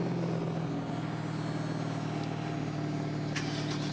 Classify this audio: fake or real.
real